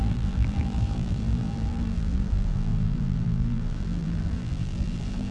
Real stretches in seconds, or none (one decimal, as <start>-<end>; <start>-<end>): none